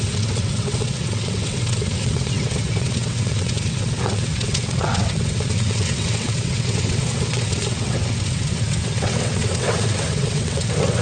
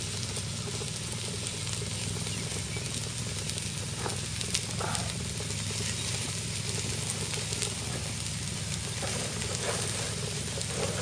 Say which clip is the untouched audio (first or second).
second